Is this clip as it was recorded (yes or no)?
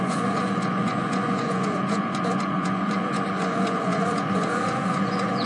no